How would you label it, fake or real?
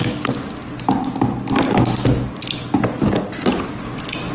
real